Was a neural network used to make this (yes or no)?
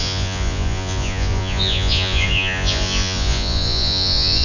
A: yes